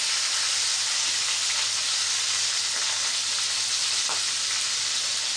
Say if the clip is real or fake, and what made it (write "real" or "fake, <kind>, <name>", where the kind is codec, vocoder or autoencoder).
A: real